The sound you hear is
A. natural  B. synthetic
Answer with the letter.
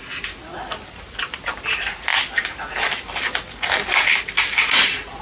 A